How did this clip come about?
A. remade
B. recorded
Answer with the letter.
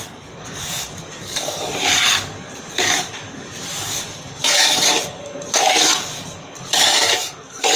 A